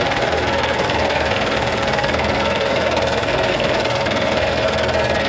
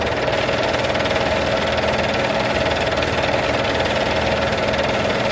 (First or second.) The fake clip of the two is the first